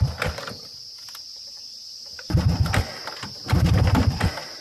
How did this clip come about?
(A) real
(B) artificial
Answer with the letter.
A